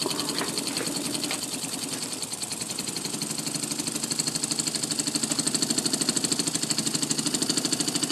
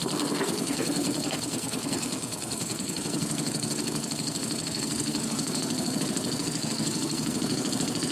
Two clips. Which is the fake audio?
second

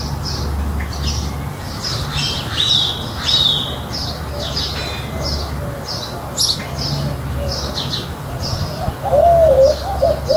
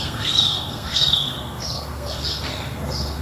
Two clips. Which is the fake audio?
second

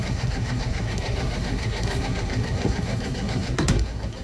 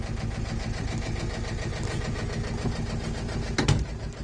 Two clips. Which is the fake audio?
first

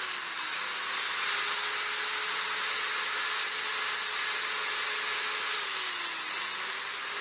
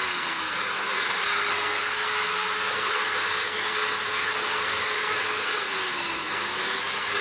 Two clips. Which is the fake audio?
second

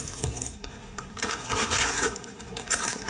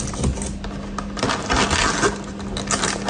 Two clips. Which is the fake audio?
first